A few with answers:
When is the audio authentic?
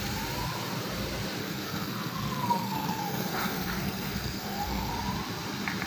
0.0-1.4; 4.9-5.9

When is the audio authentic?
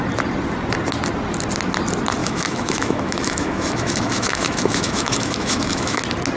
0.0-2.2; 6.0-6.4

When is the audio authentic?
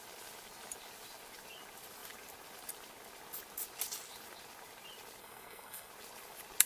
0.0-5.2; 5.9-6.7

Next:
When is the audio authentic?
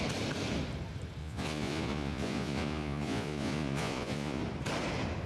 0.0-1.2; 4.4-5.3